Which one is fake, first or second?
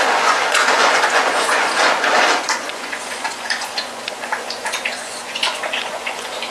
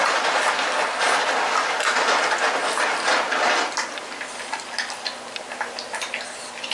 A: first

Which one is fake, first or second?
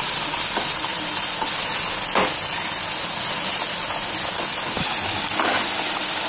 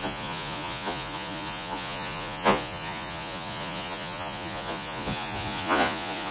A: second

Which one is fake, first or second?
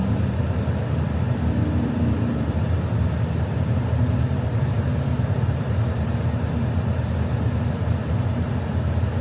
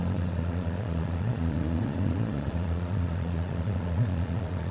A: second